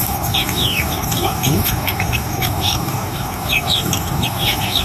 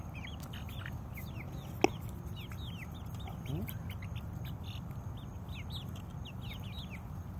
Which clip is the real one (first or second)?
second